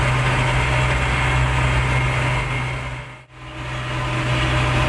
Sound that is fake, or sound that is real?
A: real